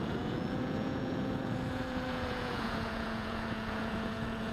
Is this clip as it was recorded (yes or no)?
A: no